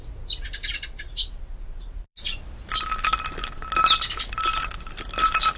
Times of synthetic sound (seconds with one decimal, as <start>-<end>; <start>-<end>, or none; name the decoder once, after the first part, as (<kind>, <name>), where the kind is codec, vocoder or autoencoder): none